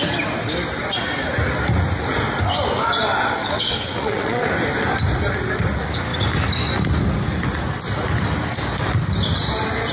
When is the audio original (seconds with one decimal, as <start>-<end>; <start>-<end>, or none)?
0.0-3.4; 4.5-9.9